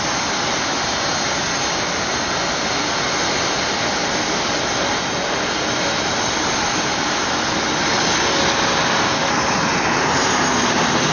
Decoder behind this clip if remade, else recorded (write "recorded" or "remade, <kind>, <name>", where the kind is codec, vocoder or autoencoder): recorded